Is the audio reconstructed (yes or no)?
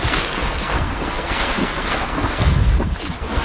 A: yes